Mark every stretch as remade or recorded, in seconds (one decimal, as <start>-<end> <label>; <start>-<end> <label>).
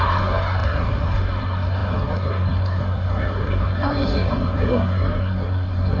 0.0-6.0 remade